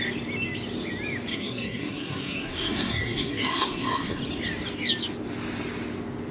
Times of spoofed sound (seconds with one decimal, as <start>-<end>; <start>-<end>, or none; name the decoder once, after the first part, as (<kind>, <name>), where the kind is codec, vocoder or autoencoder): 1.3-4.2 (codec, SNAC)